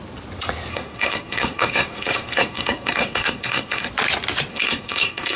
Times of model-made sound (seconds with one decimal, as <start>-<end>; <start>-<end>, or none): 0.7-3.9; 4.5-5.4